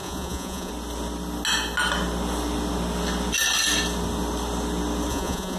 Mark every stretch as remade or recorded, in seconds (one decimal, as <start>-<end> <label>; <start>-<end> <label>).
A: 0.0-0.7 remade; 0.7-5.1 recorded; 5.1-5.6 remade